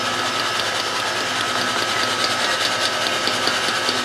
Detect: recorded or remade recorded